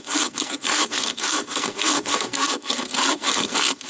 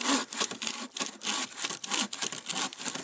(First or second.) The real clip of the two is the second